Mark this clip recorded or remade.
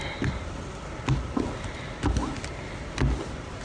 recorded